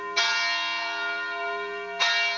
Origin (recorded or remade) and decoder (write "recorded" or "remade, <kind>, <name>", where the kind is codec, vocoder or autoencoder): recorded